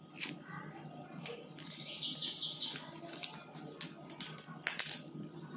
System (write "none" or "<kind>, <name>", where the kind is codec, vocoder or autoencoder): none